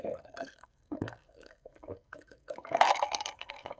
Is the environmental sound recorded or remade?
remade